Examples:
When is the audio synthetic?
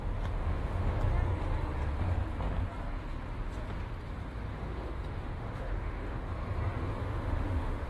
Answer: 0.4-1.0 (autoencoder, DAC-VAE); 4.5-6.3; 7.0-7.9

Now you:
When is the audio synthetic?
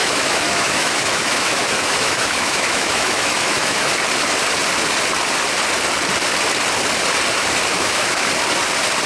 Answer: 0.0-3.9 (autoencoder, DAC-VAE); 7.7-8.3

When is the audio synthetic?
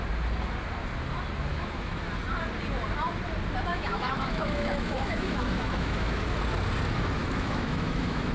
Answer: 1.5-2.0 (autoencoder, DAC-VAE); 3.7-6.4; 7.2-8.3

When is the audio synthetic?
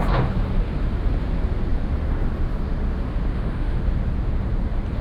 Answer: 3.3-3.8 (autoencoder, DAC-VAE)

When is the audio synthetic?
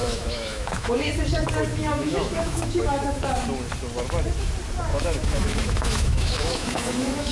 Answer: 0.0-1.1 (autoencoder, DAC-VAE); 1.7-3.2; 4.9-7.3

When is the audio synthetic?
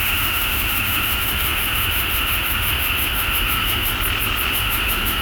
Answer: 0.0-3.9 (autoencoder, DAC-VAE); 4.5-5.2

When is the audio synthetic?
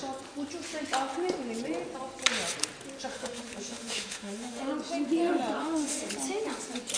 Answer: 3.1-4.7 (autoencoder, DAC-VAE); 5.6-6.1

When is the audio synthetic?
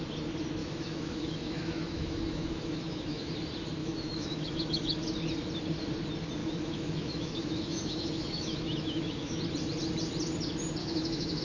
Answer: 0.6-3.3 (autoencoder, DAC-VAE); 3.8-5.0; 6.4-9.4; 10.8-11.4